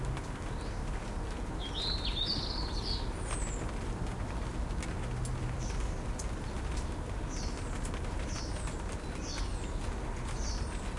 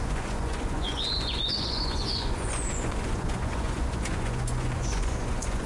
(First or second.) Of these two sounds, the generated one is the second